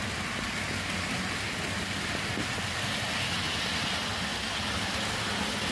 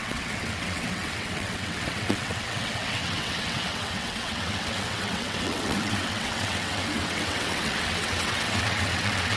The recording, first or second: first